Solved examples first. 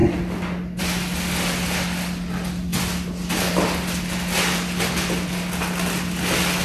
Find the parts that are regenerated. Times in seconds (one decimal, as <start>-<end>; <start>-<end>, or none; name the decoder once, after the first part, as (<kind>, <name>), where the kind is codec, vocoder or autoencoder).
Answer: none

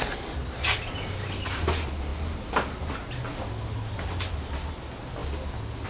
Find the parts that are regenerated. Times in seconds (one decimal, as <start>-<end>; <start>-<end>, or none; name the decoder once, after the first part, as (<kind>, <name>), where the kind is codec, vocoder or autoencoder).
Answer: none

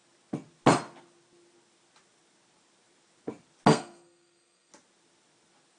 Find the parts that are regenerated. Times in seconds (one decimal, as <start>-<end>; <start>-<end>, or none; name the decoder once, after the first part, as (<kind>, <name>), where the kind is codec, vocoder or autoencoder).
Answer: 3.7-4.7 (codec, SNAC)

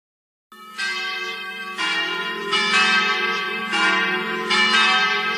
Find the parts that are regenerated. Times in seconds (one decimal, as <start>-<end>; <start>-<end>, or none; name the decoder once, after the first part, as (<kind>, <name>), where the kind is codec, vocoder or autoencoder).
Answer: none

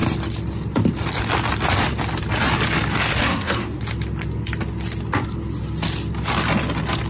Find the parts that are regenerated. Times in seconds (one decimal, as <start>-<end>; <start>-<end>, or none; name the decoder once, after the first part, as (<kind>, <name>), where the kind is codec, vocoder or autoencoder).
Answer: 3.2-3.8 (codec, SNAC)

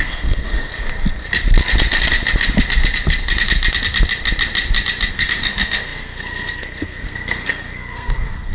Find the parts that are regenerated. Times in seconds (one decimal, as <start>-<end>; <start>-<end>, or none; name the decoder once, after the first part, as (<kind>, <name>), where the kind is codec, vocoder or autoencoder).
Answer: 0.0-0.7 (codec, SNAC); 5.1-8.5

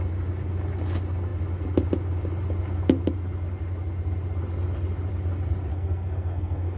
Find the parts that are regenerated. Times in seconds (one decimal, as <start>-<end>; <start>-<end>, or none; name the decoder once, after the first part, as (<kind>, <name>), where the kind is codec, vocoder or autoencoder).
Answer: 5.7-6.8 (codec, SNAC)